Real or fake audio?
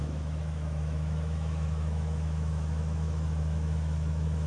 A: fake